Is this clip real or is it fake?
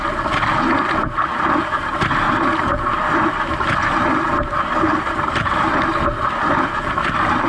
real